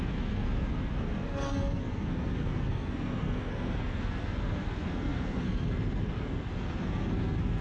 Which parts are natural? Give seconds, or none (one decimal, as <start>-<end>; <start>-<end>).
none